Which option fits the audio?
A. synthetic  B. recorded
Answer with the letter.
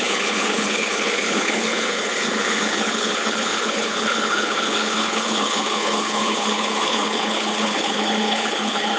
A